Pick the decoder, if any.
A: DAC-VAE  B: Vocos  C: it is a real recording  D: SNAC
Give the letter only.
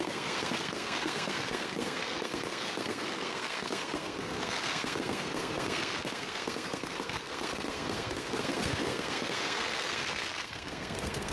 D